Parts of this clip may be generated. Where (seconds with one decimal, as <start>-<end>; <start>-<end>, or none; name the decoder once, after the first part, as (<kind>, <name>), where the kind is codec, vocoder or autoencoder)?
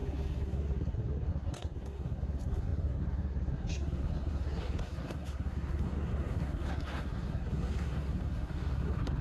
0.0-9.2 (codec, SNAC)